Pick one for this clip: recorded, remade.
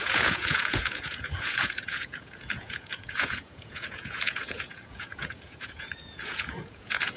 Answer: remade